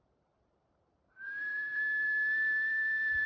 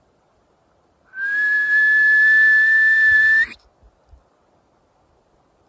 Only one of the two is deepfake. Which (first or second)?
first